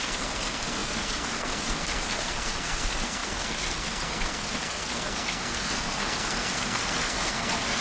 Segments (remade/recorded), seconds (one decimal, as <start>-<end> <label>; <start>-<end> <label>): 0.0-7.8 remade